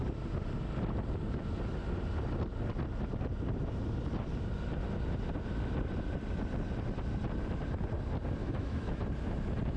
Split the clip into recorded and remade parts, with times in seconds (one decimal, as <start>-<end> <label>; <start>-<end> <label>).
0.0-8.4 recorded; 8.4-9.0 remade; 9.0-9.8 recorded